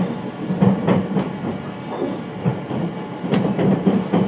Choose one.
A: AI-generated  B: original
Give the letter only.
B